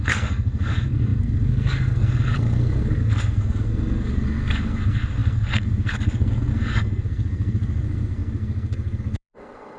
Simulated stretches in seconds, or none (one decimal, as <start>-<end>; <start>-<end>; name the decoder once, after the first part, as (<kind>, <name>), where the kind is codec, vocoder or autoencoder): 0.0-9.8 (codec, SNAC)